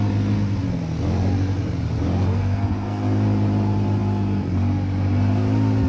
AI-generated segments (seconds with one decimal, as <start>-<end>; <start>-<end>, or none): 2.3-3.0